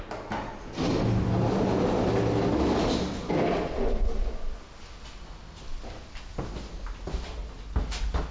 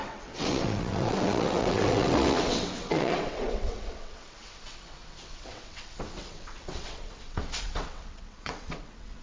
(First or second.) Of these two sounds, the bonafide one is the first